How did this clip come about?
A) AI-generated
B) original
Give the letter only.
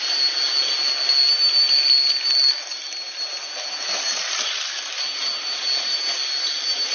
B